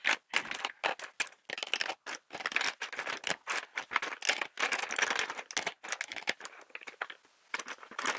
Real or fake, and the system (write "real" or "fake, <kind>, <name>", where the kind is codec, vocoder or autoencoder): real